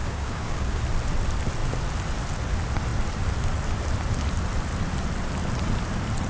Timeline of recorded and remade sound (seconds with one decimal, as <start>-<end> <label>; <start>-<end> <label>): 0.0-0.8 remade; 0.8-6.3 recorded